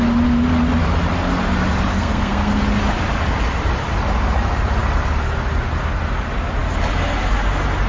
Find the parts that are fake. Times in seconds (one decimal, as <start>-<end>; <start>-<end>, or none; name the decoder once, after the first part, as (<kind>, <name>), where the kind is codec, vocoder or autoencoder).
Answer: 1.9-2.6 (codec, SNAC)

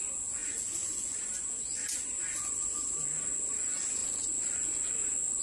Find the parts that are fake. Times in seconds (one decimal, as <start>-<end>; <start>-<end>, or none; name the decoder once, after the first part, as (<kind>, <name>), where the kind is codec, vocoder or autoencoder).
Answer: 0.4-2.2 (vocoder, Vocos)

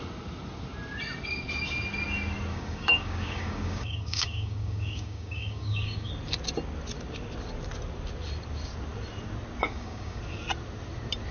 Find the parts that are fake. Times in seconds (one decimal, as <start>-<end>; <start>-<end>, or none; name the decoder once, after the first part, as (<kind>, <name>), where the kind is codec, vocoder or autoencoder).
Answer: 2.5-6.1 (codec, DAC); 9.6-10.2